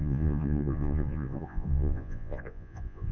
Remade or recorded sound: remade